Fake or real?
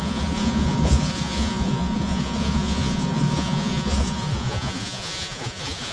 fake